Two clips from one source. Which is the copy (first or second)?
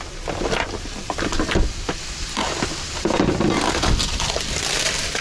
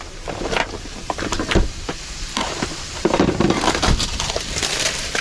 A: second